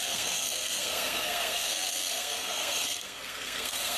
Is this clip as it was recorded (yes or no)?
no